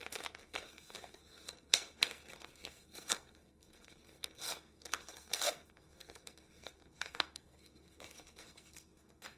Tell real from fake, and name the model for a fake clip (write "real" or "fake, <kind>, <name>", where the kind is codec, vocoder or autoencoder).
fake, codec, SNAC